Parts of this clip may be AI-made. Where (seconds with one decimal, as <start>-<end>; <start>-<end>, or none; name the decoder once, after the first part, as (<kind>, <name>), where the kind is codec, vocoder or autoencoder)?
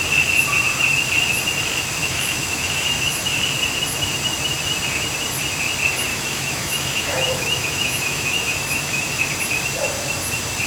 2.0-3.4 (autoencoder, DAC-VAE); 6.1-9.2